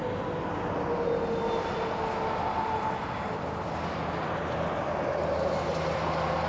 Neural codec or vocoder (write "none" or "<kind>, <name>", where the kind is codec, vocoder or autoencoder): none